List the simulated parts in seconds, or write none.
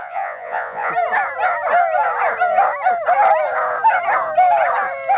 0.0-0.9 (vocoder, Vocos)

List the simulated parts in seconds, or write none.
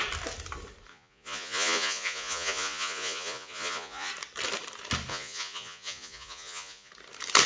0.9-4.1 (vocoder, Vocos); 5.1-6.9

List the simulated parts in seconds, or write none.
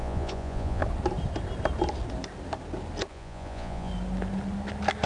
0.0-0.8 (vocoder, Vocos); 3.1-3.9